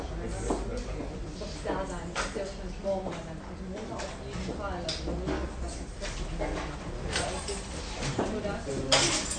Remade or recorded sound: recorded